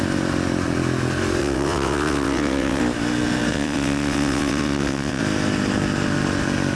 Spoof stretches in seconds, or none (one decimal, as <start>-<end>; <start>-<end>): 1.4-2.8; 3.5-5.2